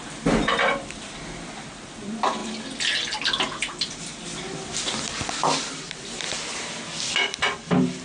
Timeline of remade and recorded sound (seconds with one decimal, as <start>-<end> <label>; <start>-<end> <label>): 0.0-2.4 remade; 2.4-5.7 recorded; 5.7-8.0 remade